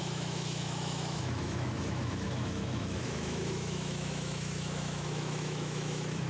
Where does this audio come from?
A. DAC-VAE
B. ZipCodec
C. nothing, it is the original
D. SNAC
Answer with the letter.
A